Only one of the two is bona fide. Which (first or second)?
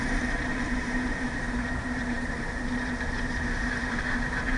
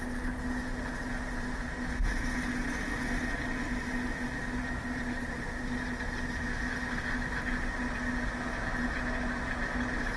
second